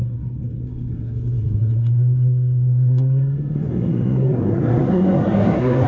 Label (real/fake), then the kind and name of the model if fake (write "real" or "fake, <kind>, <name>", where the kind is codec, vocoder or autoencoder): fake, codec, SNAC